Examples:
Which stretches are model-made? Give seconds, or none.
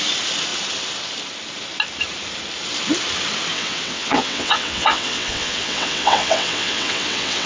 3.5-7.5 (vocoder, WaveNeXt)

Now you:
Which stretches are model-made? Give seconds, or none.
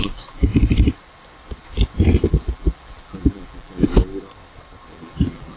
0.0-0.5 (vocoder, BigVGAN v2); 2.3-3.9; 4.9-5.6